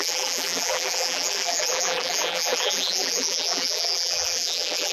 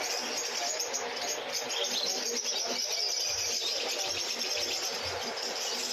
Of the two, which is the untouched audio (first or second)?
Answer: second